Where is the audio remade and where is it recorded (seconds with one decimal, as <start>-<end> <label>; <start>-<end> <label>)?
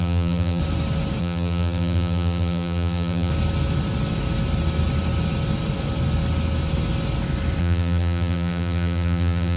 0.0-0.6 remade; 0.6-1.2 recorded; 1.2-3.3 remade; 3.3-7.6 recorded; 7.6-9.6 remade